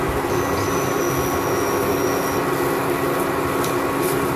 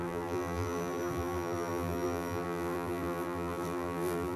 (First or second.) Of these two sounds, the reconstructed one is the second